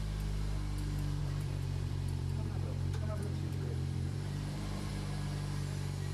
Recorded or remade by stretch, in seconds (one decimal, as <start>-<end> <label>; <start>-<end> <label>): 0.0-1.2 recorded; 1.2-4.9 remade; 4.9-6.1 recorded